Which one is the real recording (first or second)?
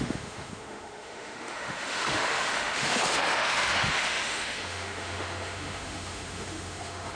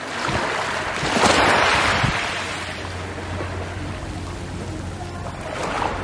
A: second